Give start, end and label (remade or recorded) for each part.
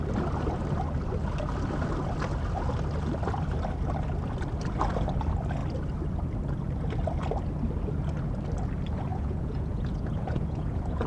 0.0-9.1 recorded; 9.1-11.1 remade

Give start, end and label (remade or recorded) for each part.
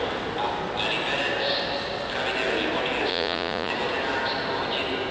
0.0-3.1 recorded; 3.1-3.7 remade; 3.7-5.1 recorded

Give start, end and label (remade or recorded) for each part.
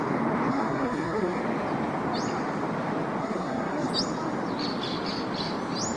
0.0-0.5 recorded; 0.5-1.4 remade; 1.4-3.2 recorded; 3.2-3.9 remade; 3.9-6.0 recorded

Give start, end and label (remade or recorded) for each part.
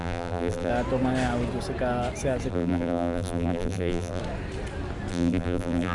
0.0-0.7 remade; 0.7-2.5 recorded; 2.5-4.2 remade; 4.2-5.1 recorded; 5.1-5.9 remade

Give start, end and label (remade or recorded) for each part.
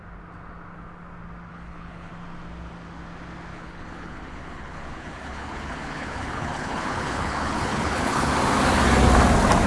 0.0-1.5 recorded; 1.5-2.1 remade; 2.1-3.5 recorded; 3.5-8.3 remade; 8.3-9.7 recorded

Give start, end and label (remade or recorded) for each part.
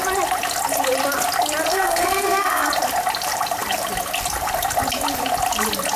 0.0-1.7 recorded; 1.7-2.7 remade; 2.7-6.0 recorded